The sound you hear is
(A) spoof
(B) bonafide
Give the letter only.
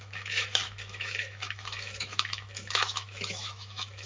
A